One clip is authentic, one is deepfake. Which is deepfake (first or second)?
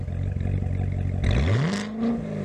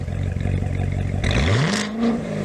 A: second